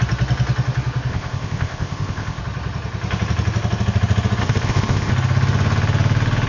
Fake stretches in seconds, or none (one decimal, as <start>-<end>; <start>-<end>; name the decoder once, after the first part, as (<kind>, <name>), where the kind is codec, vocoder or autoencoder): 1.1-2.4 (codec, ZipCodec); 4.4-5.1